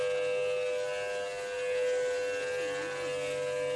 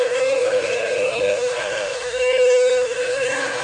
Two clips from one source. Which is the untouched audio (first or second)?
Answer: first